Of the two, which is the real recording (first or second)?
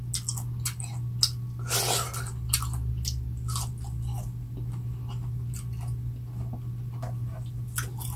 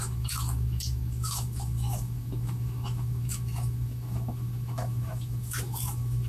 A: first